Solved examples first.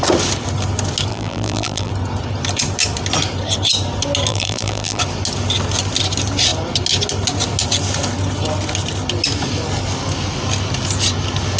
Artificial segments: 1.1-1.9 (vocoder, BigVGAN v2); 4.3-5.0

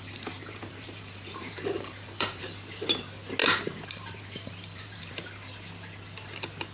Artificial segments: 0.4-2.4 (vocoder, BigVGAN v2); 3.4-5.1

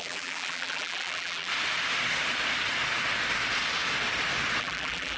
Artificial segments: 0.0-1.5 (vocoder, BigVGAN v2); 4.6-5.2